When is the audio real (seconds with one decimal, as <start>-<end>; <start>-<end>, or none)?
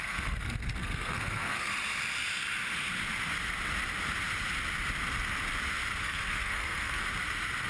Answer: 1.7-6.0; 7.0-7.7